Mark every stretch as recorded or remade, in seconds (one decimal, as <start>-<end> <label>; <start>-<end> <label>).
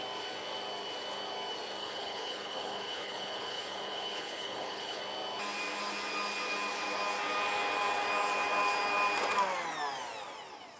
0.0-1.8 recorded; 1.8-5.0 remade; 5.0-10.8 recorded